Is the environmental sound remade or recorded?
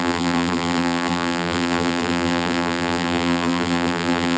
remade